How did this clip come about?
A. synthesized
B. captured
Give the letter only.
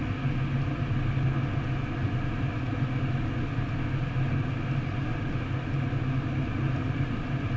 B